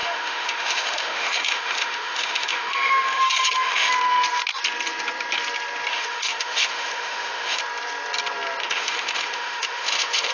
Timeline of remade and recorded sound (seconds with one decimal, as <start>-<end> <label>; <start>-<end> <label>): 0.0-3.9 remade; 3.9-5.9 recorded; 5.9-7.6 remade; 7.6-8.6 recorded; 8.6-10.3 remade